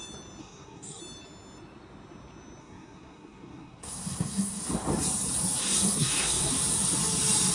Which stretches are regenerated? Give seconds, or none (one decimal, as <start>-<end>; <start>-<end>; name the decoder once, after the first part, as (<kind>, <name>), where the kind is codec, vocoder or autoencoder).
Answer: 0.4-1.0 (codec, SNAC); 2.6-4.6; 5.6-6.5